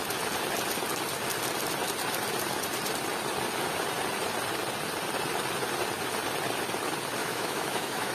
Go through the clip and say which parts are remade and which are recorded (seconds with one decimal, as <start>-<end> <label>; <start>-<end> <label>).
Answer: 0.0-7.2 recorded; 7.2-8.1 remade